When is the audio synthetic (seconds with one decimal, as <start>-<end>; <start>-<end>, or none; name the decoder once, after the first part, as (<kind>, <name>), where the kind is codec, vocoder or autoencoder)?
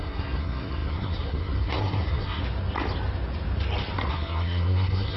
0.0-2.4 (codec, SNAC); 4.1-5.2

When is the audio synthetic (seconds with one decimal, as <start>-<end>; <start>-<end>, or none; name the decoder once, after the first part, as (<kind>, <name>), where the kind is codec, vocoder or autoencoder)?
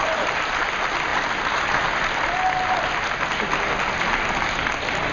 none